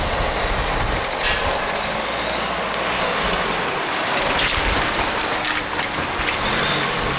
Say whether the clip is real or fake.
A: real